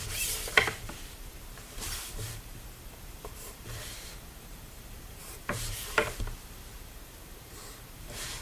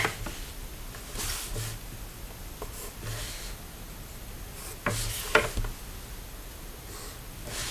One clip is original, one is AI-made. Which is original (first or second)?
second